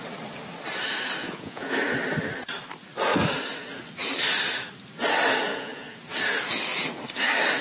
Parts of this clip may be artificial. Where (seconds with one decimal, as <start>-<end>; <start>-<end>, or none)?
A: 1.2-1.8; 5.5-6.0